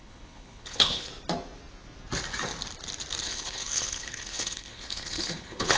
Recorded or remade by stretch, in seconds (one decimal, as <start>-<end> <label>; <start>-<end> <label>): 0.0-1.1 remade; 1.1-3.2 recorded; 3.2-5.8 remade